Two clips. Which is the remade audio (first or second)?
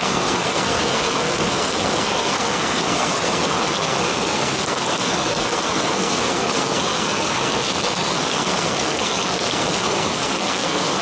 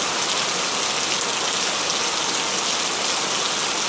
first